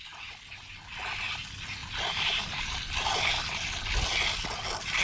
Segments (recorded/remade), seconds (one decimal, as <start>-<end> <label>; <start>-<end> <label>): 0.0-1.8 recorded; 1.8-3.3 remade; 3.3-5.0 recorded